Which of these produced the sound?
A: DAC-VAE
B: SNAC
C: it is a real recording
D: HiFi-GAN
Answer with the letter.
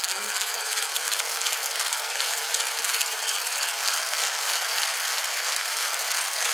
B